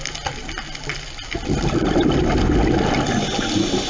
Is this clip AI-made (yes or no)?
no